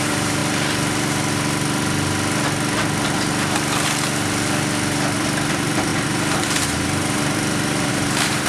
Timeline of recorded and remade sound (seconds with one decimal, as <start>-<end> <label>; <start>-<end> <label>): 0.0-0.4 remade; 0.4-5.5 recorded; 5.5-8.5 remade